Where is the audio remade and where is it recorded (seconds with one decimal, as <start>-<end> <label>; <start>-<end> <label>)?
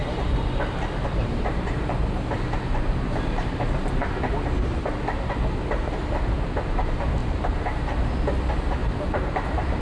0.0-4.8 remade; 4.8-7.2 recorded; 7.2-8.1 remade; 8.1-8.8 recorded; 8.8-9.8 remade